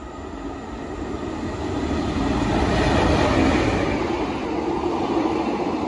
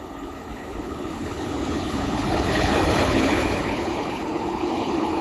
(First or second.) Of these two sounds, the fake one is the second